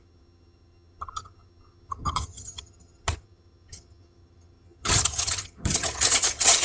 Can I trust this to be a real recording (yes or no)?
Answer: no